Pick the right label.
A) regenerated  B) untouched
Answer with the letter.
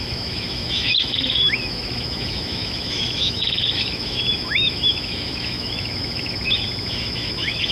A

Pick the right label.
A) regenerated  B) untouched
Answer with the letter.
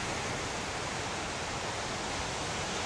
B